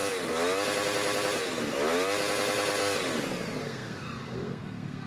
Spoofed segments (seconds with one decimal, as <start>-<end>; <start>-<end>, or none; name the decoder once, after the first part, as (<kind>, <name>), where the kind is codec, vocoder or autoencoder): 3.6-5.1 (codec, SNAC)